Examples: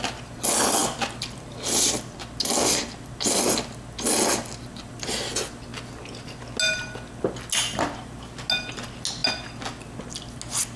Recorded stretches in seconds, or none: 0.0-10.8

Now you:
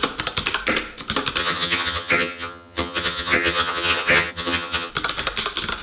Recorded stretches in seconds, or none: 0.0-1.4; 4.9-5.8

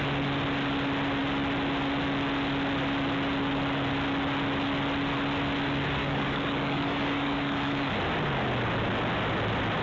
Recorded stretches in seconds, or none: 0.0-6.0; 7.9-9.8

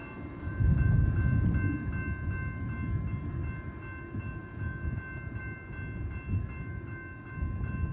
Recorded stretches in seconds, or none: 0.0-7.9

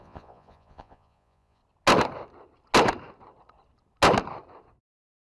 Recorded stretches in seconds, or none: 1.6-4.8